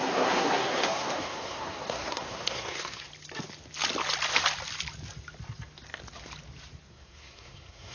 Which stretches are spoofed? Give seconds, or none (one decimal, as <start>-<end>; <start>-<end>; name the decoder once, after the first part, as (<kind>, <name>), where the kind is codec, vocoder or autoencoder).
0.0-3.1 (codec, SNAC); 6.9-7.9